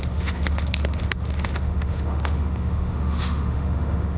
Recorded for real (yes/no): no